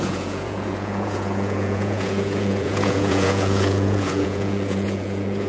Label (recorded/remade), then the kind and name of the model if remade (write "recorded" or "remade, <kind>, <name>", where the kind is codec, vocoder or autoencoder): remade, vocoder, Vocos